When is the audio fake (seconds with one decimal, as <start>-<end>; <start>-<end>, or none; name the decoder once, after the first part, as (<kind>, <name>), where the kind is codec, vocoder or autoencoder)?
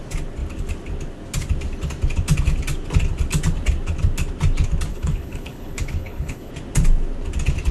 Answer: 4.9-6.5 (codec, HILCodec)